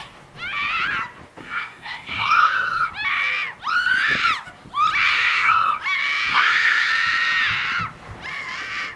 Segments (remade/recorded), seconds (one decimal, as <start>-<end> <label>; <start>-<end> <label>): 0.0-1.4 recorded; 1.4-2.9 remade; 2.9-5.1 recorded; 5.1-5.8 remade; 5.8-6.3 recorded; 6.3-6.9 remade; 6.9-9.0 recorded